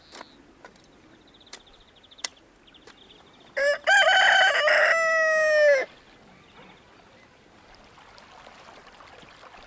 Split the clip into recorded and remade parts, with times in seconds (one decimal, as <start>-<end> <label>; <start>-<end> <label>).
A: 0.0-9.7 recorded